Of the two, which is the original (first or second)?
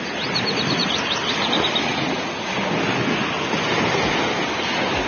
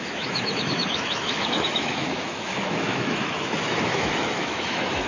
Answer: first